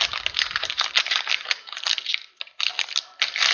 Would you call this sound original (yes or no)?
yes